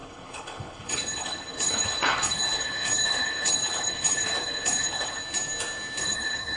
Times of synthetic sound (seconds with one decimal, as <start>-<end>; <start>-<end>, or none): 0.0-5.2; 6.0-6.6